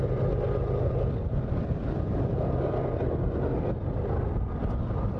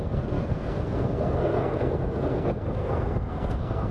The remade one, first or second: second